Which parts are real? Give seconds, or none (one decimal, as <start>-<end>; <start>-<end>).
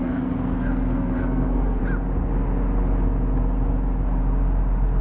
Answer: 1.8-5.0